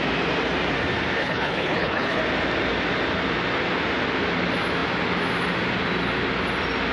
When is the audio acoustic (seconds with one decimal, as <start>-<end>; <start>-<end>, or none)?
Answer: 0.0-1.2; 2.2-6.9